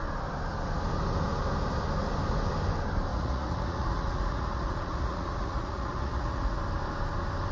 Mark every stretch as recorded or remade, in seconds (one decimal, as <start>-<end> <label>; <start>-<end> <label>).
0.0-3.1 recorded; 3.1-6.6 remade; 6.6-7.5 recorded